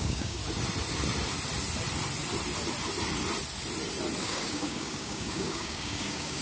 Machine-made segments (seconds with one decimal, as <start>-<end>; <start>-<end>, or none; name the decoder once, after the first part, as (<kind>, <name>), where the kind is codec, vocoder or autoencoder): 0.0-0.4 (codec, DAC); 4.2-6.4